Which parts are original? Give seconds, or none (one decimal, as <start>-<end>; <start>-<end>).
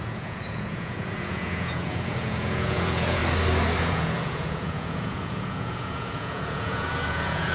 3.2-3.8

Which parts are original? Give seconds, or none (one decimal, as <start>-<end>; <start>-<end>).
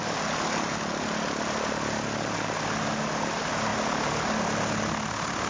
0.0-5.5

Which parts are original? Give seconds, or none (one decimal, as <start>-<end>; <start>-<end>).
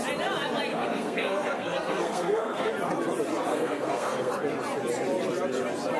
0.0-0.7; 2.7-3.5; 4.3-6.0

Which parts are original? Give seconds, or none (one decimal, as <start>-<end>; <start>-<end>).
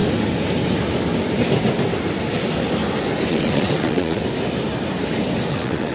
0.0-3.3; 4.2-5.5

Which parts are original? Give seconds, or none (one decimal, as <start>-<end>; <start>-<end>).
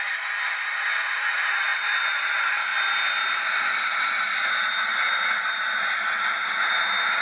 0.0-7.2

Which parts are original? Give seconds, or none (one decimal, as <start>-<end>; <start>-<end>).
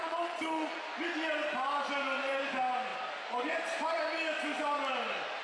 0.8-5.4